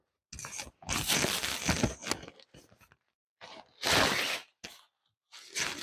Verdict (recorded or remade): recorded